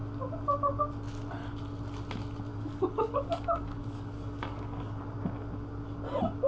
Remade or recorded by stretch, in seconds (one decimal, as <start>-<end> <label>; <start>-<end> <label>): 0.0-2.5 recorded; 2.5-5.0 remade; 5.0-6.5 recorded